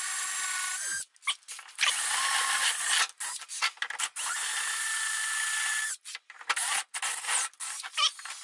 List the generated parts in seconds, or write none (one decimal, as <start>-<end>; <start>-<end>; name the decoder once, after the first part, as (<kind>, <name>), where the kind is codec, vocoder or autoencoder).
none